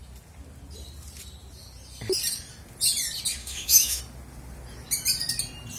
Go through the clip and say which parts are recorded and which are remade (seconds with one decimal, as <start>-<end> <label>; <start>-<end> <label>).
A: 0.0-3.4 recorded; 3.4-4.0 remade; 4.0-5.8 recorded